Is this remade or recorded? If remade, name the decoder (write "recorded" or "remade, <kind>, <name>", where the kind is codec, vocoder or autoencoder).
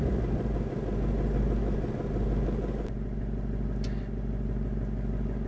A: recorded